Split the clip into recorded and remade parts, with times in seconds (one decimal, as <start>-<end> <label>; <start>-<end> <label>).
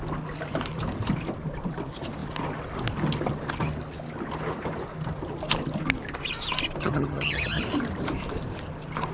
0.0-6.8 recorded; 6.8-7.6 remade; 7.6-9.1 recorded